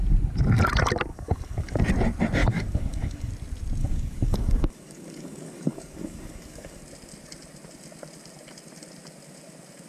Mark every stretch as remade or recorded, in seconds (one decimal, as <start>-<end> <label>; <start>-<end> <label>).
0.0-1.1 recorded; 1.1-1.8 remade; 1.8-2.4 recorded; 2.4-3.3 remade; 3.3-3.8 recorded; 3.8-6.8 remade; 6.8-9.9 recorded

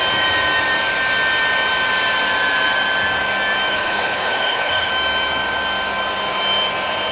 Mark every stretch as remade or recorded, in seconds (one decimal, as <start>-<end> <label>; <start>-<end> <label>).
0.0-3.7 recorded; 3.7-4.9 remade; 4.9-7.1 recorded

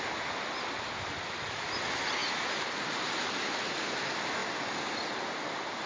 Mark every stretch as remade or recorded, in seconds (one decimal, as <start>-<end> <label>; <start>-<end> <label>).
0.0-5.9 recorded